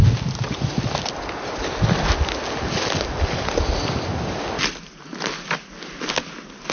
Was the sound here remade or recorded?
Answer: recorded